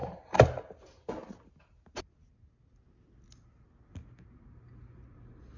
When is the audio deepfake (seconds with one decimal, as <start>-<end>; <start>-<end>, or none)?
none